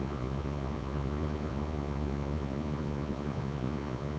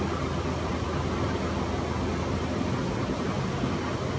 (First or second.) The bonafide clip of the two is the second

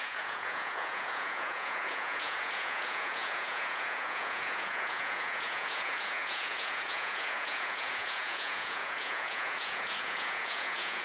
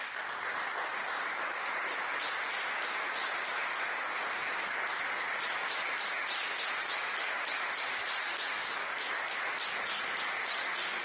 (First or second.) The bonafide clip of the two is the second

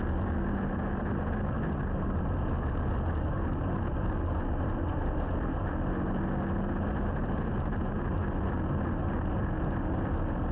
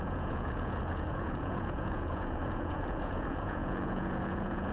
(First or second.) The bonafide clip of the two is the first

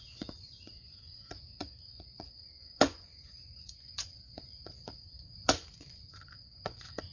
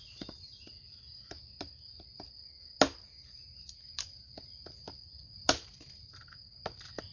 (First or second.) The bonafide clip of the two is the second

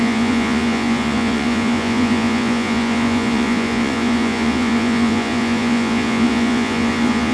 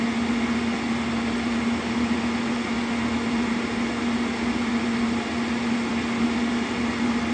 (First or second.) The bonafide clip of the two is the second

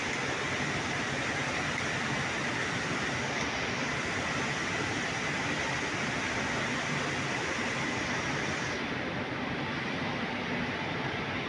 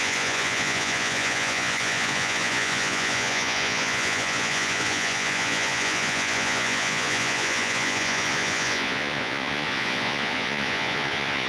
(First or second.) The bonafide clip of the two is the first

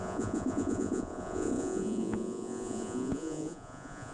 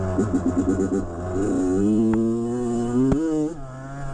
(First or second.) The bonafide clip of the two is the second